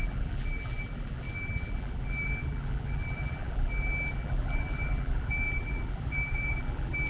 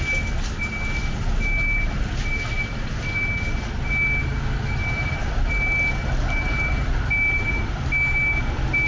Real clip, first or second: second